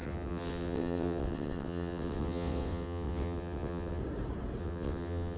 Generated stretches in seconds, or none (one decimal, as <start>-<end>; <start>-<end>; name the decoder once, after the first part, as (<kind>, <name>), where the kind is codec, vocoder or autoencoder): 0.0-4.0 (vocoder, WaveNeXt); 4.6-5.4